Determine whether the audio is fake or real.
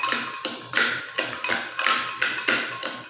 real